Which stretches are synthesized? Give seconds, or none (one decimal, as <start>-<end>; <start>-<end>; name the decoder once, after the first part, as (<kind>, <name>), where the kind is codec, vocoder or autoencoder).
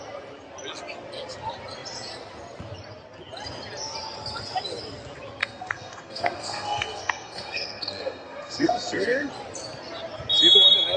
5.4-9.3 (codec, SNAC)